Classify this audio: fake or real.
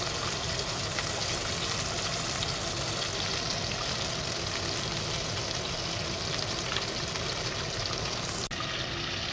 real